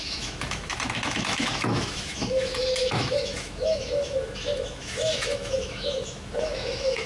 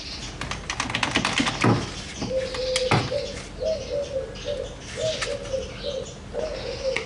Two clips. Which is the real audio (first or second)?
second